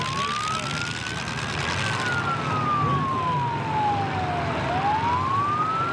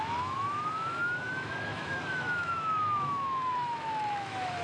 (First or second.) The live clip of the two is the first